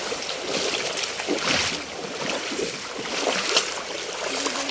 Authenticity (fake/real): fake